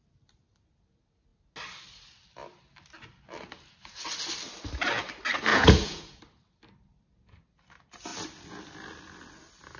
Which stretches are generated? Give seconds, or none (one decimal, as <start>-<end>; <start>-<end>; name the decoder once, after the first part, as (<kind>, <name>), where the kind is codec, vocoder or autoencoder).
5.5-6.2 (vocoder, Vocos)